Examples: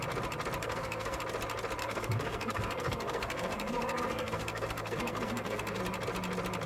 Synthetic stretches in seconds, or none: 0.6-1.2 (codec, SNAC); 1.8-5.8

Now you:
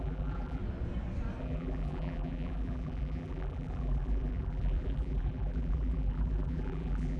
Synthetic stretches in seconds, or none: 0.0-0.6 (vocoder, BigVGAN v2); 1.4-7.2

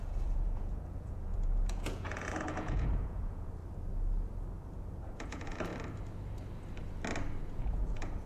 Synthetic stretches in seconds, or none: 0.0-3.6 (vocoder, Vocos); 5.0-5.7; 7.4-8.3

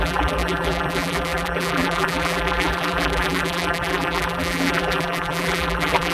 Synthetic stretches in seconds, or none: 0.0-6.1 (vocoder, BigVGAN v2)

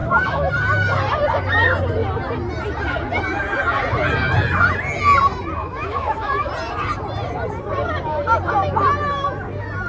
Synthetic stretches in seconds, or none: 0.0-0.5 (autoencoder, DAC-VAE); 5.6-6.5

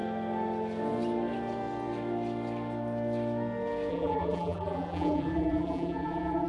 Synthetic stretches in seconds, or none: 3.9-6.5 (vocoder, BigVGAN v2)

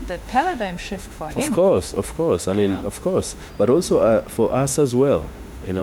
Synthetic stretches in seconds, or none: 0.0-3.5 (autoencoder, DAC-VAE); 4.7-5.8

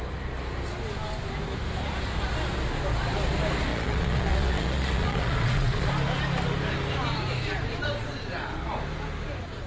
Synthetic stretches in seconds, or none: 3.7-5.9 (vocoder, Vocos)